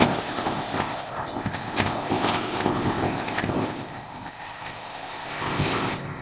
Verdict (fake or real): fake